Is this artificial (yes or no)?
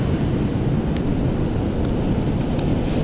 no